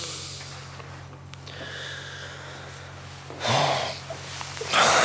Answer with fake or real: real